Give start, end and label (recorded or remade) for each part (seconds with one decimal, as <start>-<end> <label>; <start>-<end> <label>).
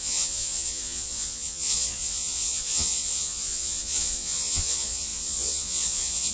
0.0-6.3 remade